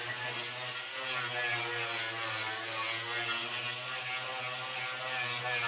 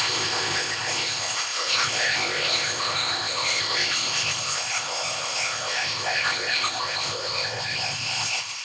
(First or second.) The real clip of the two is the first